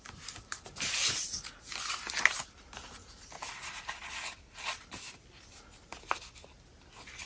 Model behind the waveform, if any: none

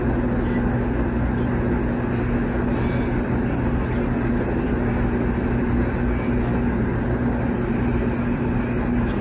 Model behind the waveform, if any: none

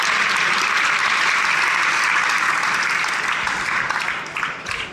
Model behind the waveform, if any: none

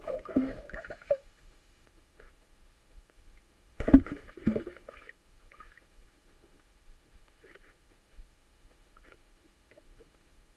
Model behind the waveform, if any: autoencoder, DAC-VAE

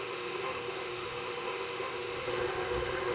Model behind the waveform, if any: autoencoder, DAC-VAE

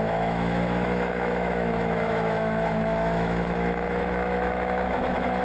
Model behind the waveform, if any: autoencoder, DAC-VAE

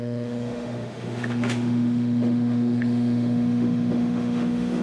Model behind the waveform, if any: autoencoder, DAC-VAE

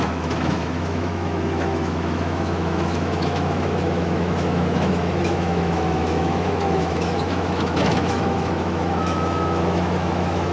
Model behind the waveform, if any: autoencoder, DAC-VAE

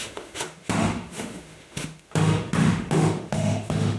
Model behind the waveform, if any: autoencoder, DAC-VAE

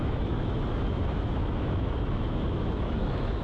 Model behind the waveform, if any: autoencoder, DAC-VAE